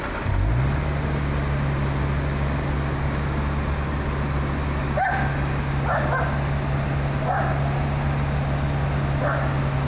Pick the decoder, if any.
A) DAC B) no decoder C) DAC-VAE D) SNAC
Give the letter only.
B